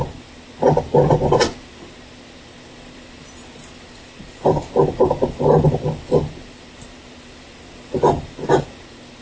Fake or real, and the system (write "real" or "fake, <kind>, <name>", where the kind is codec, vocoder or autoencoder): real